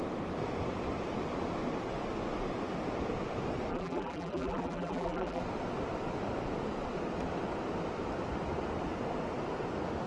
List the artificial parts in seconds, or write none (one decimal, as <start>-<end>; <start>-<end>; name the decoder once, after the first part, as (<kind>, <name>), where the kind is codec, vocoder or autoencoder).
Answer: 3.7-5.4 (vocoder, BigVGAN v2)